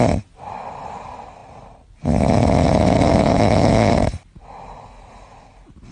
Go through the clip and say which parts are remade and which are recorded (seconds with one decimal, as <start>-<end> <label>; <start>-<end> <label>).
0.0-3.1 recorded; 3.1-3.9 remade; 3.9-5.9 recorded